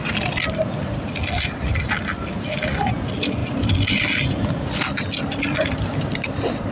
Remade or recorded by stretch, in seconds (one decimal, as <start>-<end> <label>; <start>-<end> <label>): 0.0-6.7 recorded